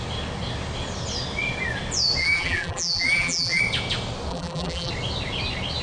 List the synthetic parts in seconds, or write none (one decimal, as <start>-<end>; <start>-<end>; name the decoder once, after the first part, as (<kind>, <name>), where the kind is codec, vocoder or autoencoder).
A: 2.2-3.6 (vocoder, BigVGAN v2); 4.3-4.9